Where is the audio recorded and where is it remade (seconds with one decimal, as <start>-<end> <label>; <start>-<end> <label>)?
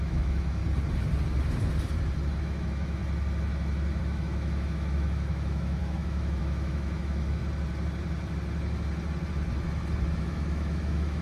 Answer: 0.0-0.6 remade; 0.6-2.4 recorded; 2.4-3.0 remade; 3.0-4.0 recorded; 4.0-7.4 remade; 7.4-10.2 recorded; 10.2-11.2 remade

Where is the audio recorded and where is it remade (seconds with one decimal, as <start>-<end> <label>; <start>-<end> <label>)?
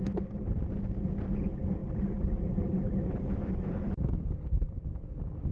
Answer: 0.0-1.8 recorded; 1.8-5.1 remade; 5.1-5.5 recorded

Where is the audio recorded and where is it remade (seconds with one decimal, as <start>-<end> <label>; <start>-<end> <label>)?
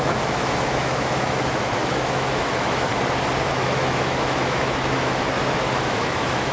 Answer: 0.0-2.9 remade; 2.9-3.5 recorded; 3.5-6.5 remade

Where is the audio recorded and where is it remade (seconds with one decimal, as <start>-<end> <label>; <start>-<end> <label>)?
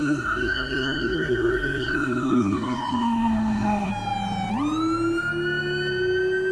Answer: 0.0-3.9 remade; 3.9-6.5 recorded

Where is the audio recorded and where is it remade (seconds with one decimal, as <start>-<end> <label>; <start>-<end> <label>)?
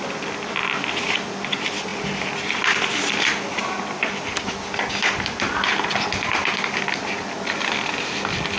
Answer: 0.0-8.6 recorded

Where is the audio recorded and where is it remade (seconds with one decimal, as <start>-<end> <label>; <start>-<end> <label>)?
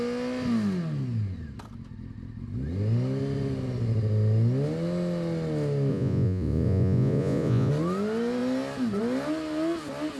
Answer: 0.0-5.9 recorded; 5.9-7.7 remade; 7.7-10.2 recorded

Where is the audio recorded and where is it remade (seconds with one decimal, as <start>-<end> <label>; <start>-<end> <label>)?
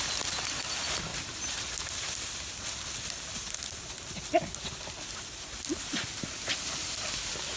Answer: 0.0-7.6 recorded